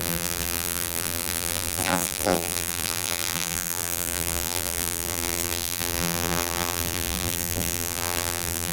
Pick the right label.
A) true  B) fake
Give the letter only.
B